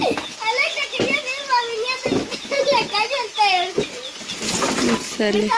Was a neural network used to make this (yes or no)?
no